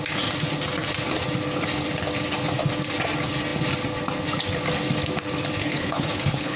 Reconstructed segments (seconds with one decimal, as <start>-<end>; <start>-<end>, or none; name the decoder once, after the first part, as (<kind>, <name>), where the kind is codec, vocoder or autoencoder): 5.6-6.6 (codec, HILCodec)